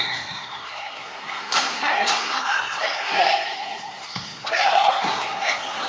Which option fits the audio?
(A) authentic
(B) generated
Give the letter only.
B